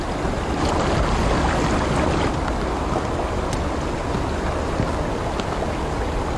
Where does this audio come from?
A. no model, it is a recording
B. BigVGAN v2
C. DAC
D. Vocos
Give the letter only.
A